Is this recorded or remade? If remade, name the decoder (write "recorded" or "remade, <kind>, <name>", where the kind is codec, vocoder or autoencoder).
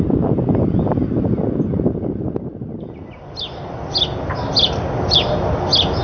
recorded